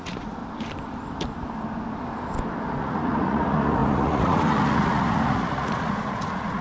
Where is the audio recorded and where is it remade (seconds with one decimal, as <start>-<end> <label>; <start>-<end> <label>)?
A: 0.0-0.4 remade; 0.4-2.8 recorded; 2.8-6.6 remade